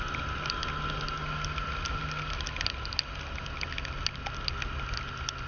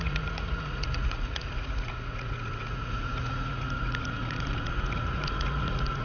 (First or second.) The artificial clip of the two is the second